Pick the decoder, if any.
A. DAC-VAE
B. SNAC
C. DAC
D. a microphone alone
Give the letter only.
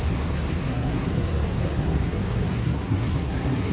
B